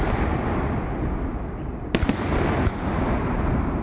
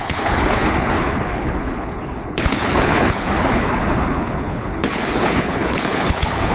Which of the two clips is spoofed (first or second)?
second